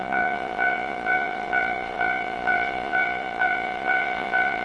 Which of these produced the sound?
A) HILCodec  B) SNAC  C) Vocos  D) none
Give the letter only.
C